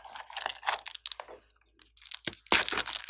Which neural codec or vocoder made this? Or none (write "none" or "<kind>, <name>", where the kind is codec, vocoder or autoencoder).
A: none